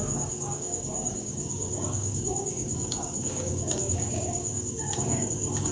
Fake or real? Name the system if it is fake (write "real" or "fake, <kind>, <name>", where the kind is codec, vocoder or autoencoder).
fake, codec, DAC